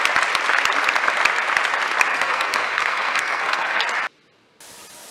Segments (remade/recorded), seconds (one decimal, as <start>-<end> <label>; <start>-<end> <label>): 0.0-2.1 recorded; 2.1-3.8 remade; 3.8-5.1 recorded